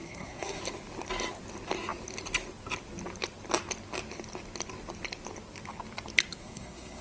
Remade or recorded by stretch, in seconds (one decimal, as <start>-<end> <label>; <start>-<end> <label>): 0.0-0.6 remade; 0.6-6.4 recorded; 6.4-7.0 remade